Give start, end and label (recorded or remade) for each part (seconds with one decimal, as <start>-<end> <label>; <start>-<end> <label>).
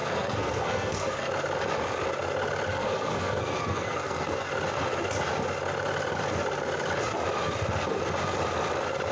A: 0.0-1.3 remade; 1.3-2.7 recorded; 2.7-4.5 remade; 4.5-9.1 recorded